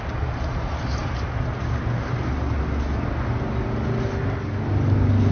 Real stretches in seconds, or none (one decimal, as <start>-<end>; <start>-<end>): 0.0-5.3